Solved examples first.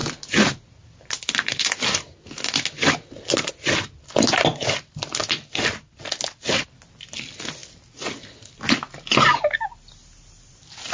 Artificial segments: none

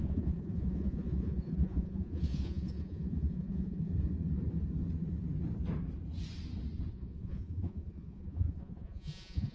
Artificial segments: 0.0-3.9 (vocoder, Vocos); 6.9-9.5

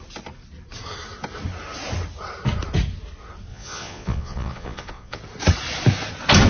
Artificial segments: 3.5-5.2 (vocoder, Vocos)

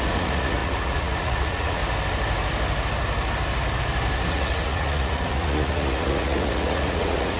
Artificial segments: 0.0-1.8 (vocoder, Vocos); 4.3-7.4

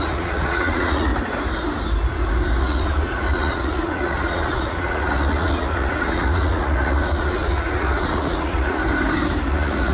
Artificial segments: 0.0-1.1 (vocoder, Vocos); 2.6-8.8; 9.5-9.9